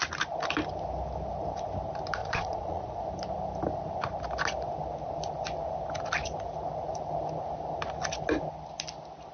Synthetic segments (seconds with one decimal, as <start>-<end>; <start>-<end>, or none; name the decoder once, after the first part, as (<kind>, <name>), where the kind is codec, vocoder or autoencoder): 2.2-3.0 (vocoder, Vocos)